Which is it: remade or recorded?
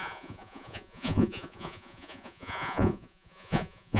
remade